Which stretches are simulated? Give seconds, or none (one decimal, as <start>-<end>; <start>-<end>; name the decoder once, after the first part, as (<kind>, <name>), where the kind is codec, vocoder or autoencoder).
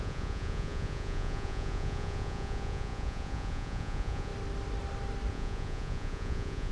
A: 0.0-4.3 (vocoder, Vocos); 5.3-6.7